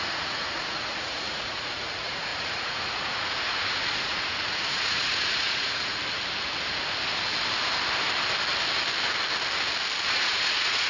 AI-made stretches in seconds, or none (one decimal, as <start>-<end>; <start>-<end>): 0.0-6.0; 10.1-10.9